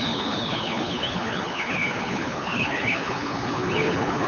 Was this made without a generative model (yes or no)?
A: no